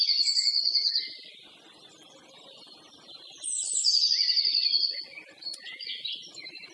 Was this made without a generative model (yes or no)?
no